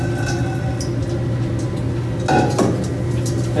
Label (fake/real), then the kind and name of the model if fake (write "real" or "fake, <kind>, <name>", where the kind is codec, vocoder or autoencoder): real